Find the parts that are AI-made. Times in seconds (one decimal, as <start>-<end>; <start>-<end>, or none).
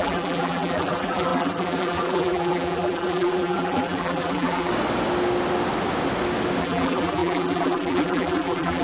0.0-4.7; 6.6-8.8